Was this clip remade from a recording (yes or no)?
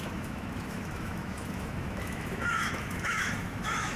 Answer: yes